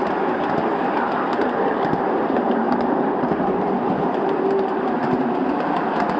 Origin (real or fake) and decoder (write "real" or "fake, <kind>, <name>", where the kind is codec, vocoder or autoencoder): fake, vocoder, BigVGAN v2